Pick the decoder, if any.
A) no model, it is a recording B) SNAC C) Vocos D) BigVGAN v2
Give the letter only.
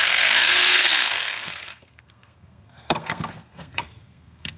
B